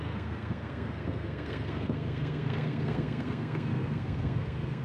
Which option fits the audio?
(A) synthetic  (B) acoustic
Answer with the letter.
A